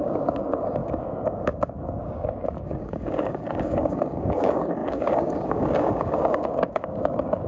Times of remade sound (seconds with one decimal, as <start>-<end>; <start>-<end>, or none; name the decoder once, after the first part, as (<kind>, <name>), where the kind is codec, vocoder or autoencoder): 0.0-7.5 (codec, DAC)